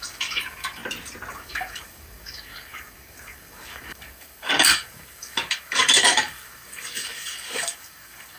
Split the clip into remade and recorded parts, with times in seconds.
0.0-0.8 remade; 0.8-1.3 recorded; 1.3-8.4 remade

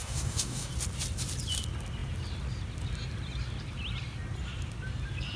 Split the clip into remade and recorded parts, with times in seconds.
0.0-0.7 remade; 0.7-5.4 recorded

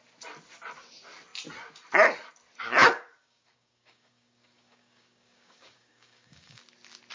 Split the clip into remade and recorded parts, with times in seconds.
0.0-2.8 recorded; 2.8-6.6 remade; 6.6-7.1 recorded

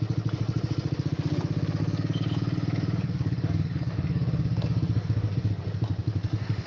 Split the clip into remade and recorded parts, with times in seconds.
0.0-1.8 recorded; 1.8-5.5 remade; 5.5-6.7 recorded

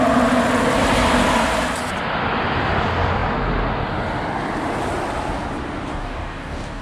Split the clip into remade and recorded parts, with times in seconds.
0.0-5.9 recorded; 5.9-6.8 remade

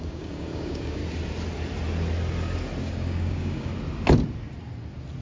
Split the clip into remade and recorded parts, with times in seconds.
0.0-1.0 remade; 1.0-2.8 recorded; 2.8-3.7 remade; 3.7-5.2 recorded